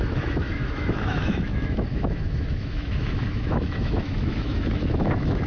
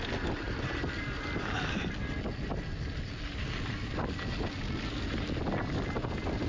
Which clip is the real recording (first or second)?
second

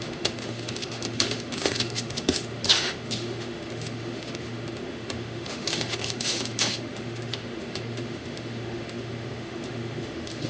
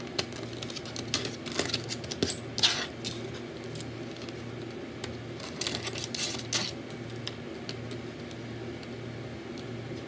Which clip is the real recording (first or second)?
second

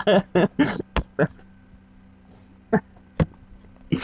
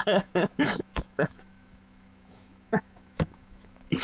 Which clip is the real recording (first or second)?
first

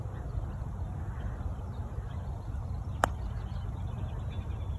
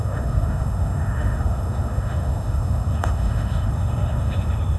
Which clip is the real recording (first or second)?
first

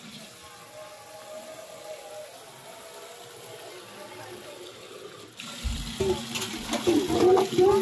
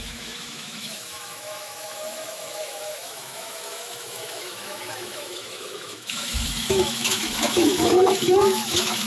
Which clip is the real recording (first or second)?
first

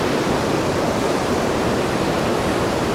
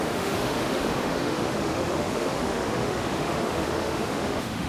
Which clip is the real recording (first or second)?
first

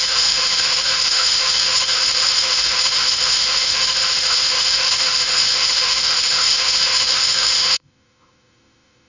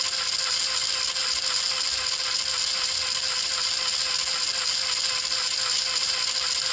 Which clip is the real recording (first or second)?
second